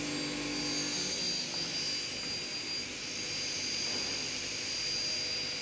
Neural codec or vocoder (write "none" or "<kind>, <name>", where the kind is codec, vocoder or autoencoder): none